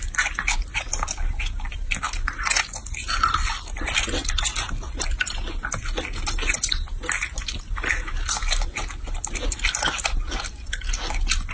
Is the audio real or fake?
real